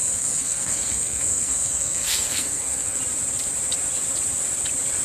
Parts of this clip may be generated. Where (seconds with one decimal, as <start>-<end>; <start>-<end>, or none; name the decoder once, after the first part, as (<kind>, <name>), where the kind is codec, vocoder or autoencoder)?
0.0-3.0 (codec, SNAC)